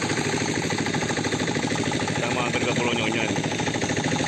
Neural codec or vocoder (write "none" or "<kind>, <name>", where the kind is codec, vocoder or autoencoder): none